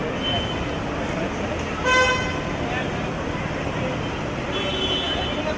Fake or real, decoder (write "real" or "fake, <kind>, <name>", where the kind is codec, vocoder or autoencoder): real